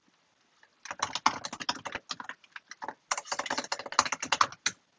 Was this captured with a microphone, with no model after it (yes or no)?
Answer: yes